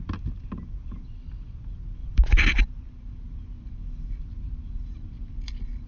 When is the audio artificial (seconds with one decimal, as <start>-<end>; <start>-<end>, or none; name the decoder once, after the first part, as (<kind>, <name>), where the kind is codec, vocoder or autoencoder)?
2.0-5.5 (vocoder, BigVGAN v2)